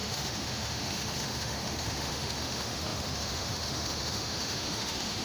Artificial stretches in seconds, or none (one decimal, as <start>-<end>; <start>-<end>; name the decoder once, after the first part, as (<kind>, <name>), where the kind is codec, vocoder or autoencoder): 0.0-5.2 (autoencoder, DAC-VAE)